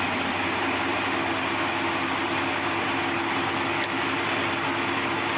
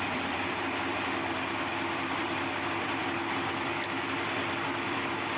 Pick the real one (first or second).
first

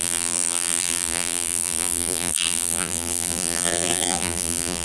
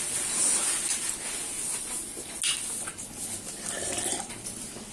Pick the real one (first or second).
second